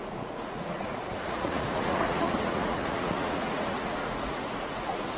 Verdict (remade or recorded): remade